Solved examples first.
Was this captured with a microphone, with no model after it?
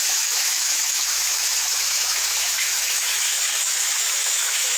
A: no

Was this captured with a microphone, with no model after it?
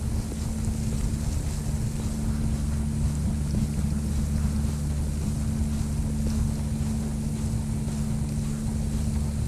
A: yes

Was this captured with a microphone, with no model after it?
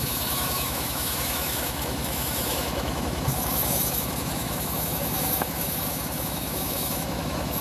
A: no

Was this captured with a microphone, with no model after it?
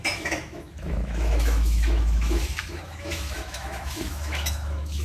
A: no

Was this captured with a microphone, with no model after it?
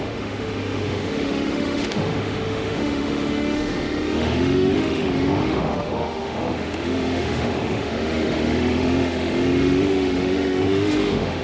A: no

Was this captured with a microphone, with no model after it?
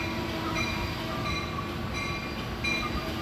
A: yes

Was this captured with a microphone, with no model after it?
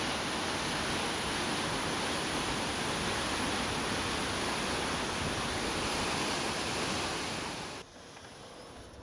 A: yes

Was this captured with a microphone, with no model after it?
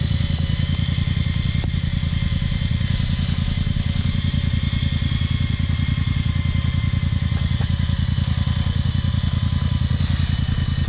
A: yes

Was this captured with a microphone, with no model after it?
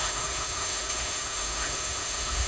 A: no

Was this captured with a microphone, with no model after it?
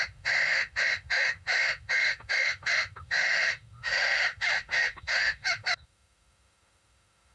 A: no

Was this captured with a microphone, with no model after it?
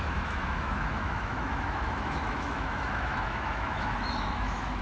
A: no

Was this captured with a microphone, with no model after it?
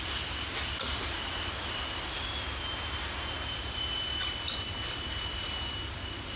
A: yes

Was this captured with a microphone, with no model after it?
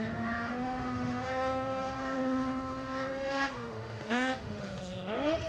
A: no